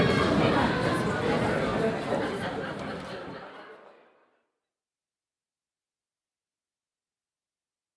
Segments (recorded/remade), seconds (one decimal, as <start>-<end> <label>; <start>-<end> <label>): 0.0-8.0 recorded